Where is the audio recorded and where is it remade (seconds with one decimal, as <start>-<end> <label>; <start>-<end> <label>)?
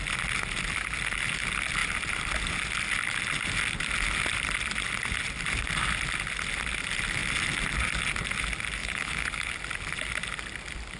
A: 0.0-8.8 recorded; 8.8-9.5 remade; 9.5-11.0 recorded